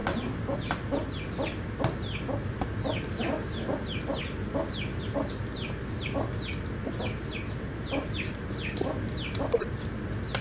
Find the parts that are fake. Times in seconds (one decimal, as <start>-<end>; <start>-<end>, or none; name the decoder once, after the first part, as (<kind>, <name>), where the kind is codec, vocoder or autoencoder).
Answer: none